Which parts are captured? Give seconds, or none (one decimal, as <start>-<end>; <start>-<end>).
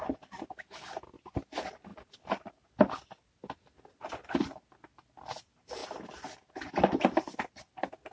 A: 0.0-8.1